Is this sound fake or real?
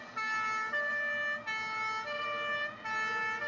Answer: real